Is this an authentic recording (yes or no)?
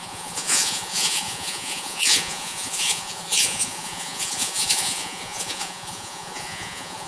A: no